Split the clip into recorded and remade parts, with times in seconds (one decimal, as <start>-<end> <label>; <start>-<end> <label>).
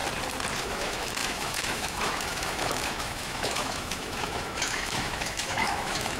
0.0-0.6 recorded; 0.6-6.2 remade